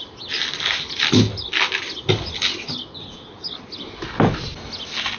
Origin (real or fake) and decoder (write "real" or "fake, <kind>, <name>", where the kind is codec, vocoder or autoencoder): real